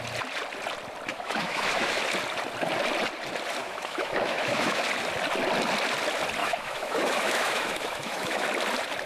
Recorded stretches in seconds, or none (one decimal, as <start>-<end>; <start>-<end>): 0.0-1.1; 2.0-3.6; 4.8-6.4; 8.5-9.1